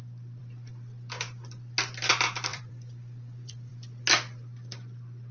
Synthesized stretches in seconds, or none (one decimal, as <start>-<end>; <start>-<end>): 2.5-3.7